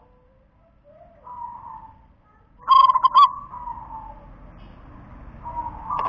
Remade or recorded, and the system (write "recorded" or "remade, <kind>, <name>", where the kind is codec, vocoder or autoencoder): recorded